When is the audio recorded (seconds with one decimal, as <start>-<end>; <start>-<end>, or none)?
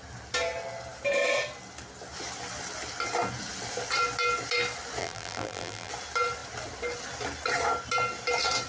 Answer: 0.0-5.0; 5.9-8.7